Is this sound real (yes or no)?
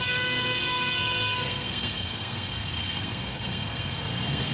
no